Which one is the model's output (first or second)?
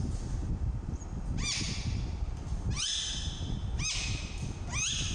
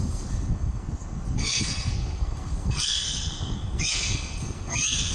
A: second